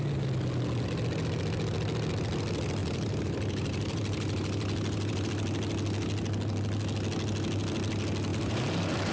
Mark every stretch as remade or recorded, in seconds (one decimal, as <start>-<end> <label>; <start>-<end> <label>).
0.0-2.8 recorded; 2.8-5.3 remade; 5.3-8.3 recorded; 8.3-9.1 remade